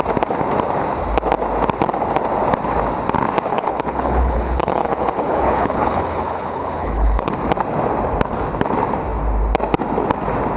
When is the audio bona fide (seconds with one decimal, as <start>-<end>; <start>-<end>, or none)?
0.0-3.5; 7.3-10.6